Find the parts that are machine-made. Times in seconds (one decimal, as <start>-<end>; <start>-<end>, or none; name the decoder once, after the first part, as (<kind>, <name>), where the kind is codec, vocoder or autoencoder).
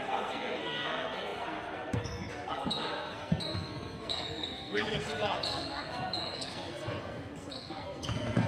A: 0.0-8.5 (codec, SNAC)